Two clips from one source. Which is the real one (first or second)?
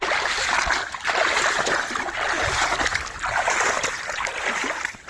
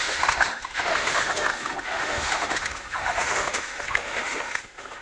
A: first